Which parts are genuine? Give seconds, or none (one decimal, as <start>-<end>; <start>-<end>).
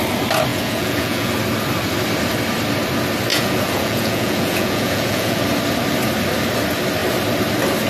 0.0-0.5; 1.3-3.3; 5.4-7.9